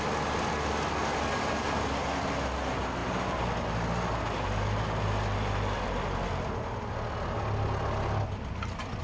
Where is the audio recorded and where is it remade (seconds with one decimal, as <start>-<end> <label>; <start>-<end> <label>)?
0.0-9.0 recorded

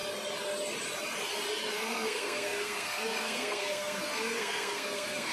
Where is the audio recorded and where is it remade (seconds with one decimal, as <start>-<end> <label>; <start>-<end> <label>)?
0.0-1.7 recorded; 1.7-5.3 remade